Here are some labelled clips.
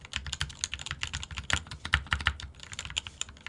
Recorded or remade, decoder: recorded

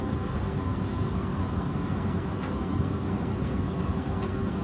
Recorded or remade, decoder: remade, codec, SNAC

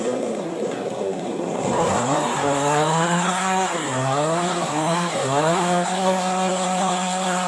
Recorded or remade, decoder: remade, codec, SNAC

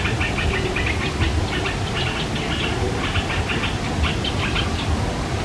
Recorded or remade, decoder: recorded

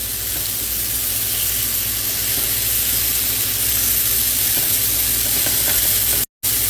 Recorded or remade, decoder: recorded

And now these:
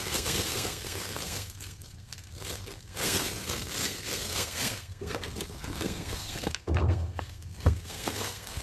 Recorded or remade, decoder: remade, codec, SNAC